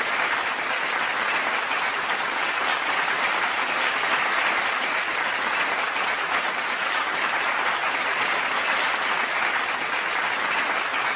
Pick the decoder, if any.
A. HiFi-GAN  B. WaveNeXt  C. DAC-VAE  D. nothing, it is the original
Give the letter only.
D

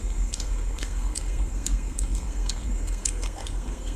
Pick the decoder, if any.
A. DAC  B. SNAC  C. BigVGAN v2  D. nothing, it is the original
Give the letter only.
B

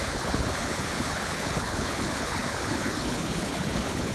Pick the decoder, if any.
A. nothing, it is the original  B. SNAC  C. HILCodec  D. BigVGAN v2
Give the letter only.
C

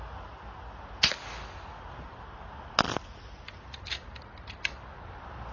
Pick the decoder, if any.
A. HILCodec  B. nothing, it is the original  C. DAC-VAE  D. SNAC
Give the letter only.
B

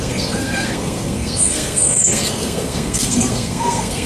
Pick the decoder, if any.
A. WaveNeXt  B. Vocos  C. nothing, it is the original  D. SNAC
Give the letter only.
D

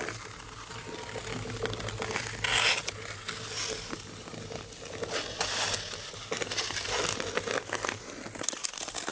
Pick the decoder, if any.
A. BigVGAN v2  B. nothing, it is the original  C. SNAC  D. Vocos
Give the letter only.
B